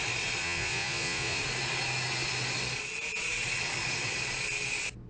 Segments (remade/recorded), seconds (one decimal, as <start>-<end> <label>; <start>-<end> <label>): 0.0-0.4 recorded; 0.4-1.4 remade; 1.4-5.1 recorded